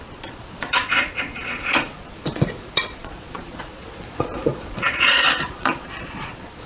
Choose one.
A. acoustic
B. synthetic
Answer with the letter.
B